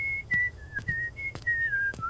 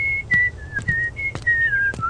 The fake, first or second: first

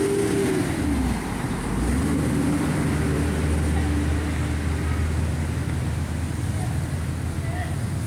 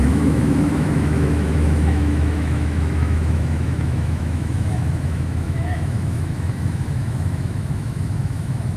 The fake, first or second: second